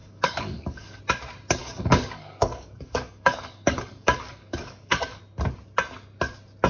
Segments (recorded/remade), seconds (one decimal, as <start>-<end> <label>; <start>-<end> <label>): 0.0-1.0 remade; 1.0-1.6 recorded; 1.6-5.2 remade; 5.2-6.7 recorded